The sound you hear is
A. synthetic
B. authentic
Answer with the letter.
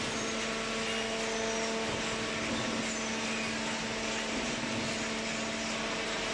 B